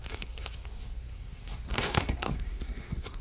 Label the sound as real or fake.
fake